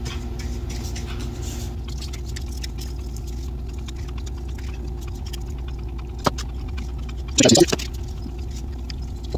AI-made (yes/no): no